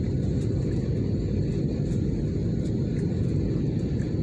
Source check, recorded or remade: recorded